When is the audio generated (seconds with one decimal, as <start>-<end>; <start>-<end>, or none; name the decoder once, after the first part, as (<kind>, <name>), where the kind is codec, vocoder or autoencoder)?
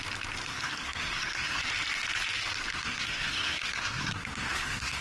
0.5-1.6 (codec, SNAC); 2.7-5.0